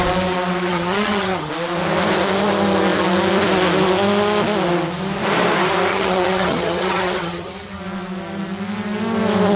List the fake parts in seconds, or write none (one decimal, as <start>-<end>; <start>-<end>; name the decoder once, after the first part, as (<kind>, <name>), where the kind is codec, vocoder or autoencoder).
0.7-1.5 (vocoder, HiFi-GAN); 5.9-7.8